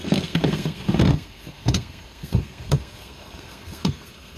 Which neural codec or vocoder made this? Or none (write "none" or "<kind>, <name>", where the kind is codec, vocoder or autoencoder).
codec, SNAC